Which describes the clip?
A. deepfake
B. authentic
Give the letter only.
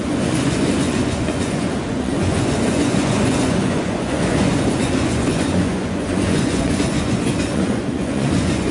A